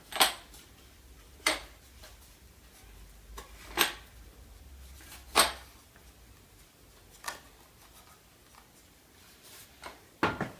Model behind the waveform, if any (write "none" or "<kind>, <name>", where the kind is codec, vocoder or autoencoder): none